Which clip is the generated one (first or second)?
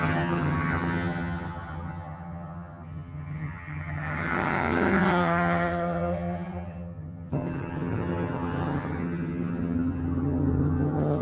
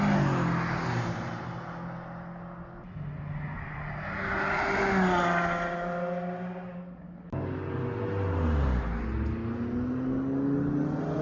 first